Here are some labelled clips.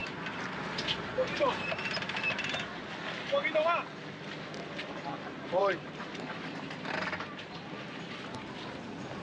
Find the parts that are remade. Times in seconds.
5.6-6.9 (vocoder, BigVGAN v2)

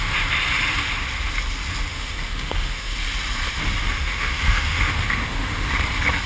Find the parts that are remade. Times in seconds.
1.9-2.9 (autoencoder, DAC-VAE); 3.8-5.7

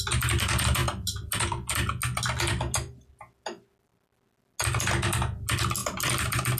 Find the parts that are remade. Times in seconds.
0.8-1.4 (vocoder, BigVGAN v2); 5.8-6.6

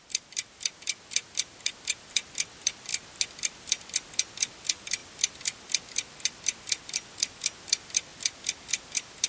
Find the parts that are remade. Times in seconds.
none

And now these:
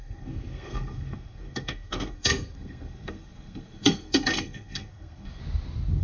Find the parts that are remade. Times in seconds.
0.0-5.4 (codec, SNAC)

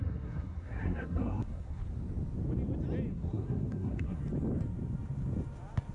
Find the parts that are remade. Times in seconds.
0.0-1.8 (codec, SNAC); 3.1-4.2

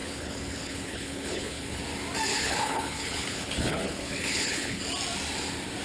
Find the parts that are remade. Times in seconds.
0.0-1.8 (codec, HILCodec); 2.3-4.8

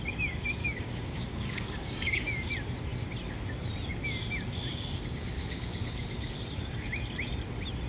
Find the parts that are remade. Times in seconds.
0.6-2.5 (codec, DAC); 4.7-6.4